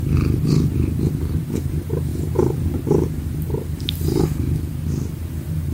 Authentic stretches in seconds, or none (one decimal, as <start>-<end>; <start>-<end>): 0.0-5.7